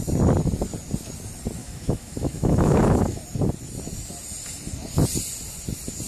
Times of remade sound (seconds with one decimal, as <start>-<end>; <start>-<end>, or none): 1.6-3.2

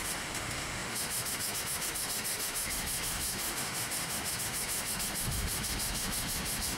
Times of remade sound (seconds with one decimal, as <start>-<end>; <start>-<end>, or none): 0.0-6.8